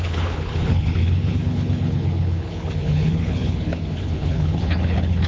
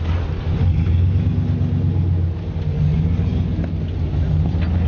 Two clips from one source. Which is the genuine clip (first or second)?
second